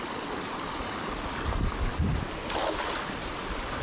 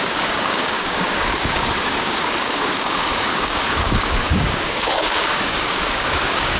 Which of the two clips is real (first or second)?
first